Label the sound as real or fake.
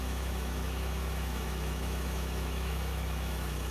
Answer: fake